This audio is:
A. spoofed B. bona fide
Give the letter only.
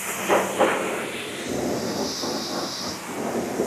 B